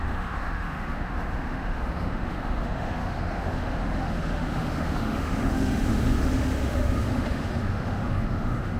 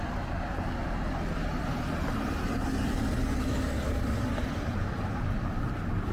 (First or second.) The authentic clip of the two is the second